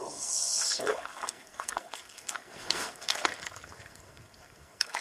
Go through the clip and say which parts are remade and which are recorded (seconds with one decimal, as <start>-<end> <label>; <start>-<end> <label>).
0.0-5.0 remade

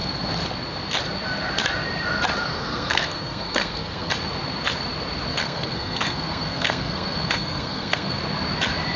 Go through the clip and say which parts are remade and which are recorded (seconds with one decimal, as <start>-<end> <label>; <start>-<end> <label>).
0.0-2.5 recorded; 2.5-4.1 remade; 4.1-5.3 recorded; 5.3-8.2 remade; 8.2-9.0 recorded

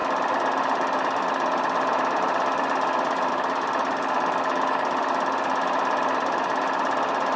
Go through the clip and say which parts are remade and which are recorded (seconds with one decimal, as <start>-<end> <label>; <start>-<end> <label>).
0.0-7.4 recorded

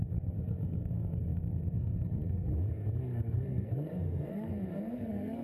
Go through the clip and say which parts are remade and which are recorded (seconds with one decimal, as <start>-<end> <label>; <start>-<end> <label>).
0.0-2.5 remade; 2.5-3.0 recorded; 3.0-5.4 remade